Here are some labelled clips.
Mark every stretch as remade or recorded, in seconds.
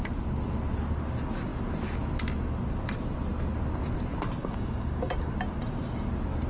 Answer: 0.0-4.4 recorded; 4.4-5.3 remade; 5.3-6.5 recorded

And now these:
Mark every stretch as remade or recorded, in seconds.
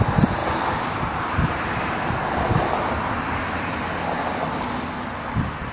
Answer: 0.0-5.7 recorded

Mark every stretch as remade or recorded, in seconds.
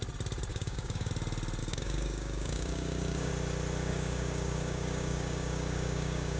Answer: 0.0-0.5 recorded; 0.5-1.1 remade; 1.1-1.6 recorded; 1.6-3.3 remade; 3.3-3.9 recorded; 3.9-6.4 remade